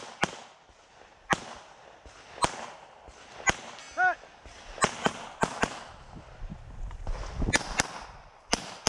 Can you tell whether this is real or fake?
real